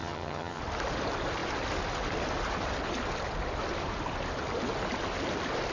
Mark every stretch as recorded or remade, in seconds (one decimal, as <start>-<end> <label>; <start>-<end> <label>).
0.0-0.6 remade; 0.6-5.7 recorded